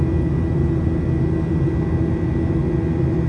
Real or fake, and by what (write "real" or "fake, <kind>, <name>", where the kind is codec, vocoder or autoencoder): real